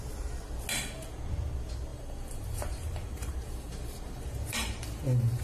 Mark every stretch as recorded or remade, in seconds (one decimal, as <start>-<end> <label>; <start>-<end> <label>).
0.0-1.9 recorded; 1.9-5.4 remade